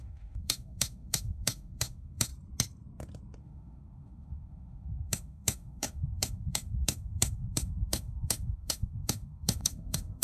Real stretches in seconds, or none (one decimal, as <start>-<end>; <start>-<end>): 2.3-3.4